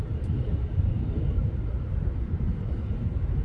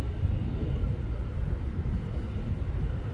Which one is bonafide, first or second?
second